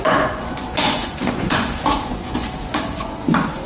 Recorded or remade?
remade